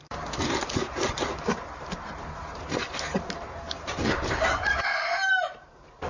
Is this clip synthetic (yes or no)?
yes